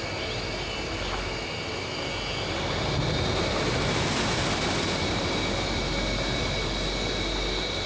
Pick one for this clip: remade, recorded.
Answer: recorded